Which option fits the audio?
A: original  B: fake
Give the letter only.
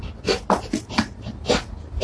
A